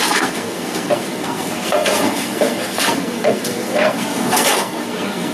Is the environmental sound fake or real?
fake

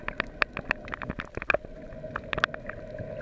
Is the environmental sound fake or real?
real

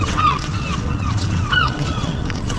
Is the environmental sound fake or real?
fake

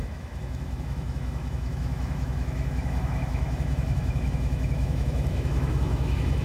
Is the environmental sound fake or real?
fake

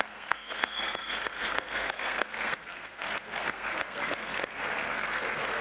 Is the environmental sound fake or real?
fake